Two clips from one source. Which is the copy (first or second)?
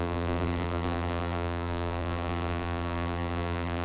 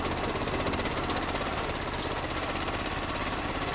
first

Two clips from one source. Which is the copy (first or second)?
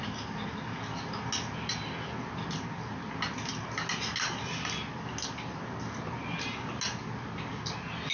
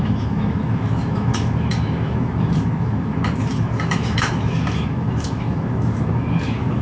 second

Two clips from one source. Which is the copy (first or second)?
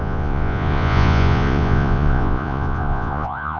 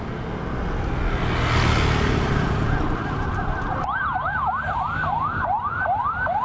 first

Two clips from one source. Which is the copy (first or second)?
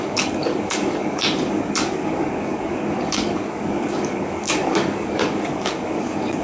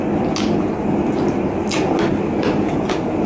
first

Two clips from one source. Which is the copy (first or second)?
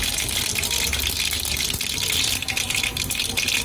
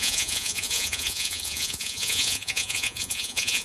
second